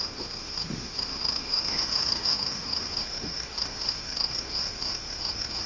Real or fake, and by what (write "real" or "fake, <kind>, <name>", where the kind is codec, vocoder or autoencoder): fake, autoencoder, DAC-VAE